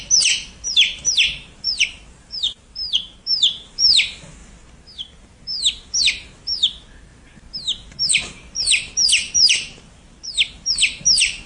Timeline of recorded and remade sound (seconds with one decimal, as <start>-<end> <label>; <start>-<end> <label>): 0.0-4.4 remade; 4.4-6.0 recorded; 6.0-7.1 remade; 7.1-8.1 recorded; 8.1-11.5 remade